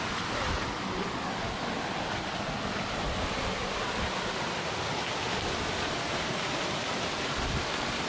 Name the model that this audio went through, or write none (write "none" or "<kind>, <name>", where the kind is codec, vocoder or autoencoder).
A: none